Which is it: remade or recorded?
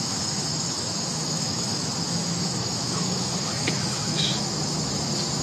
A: remade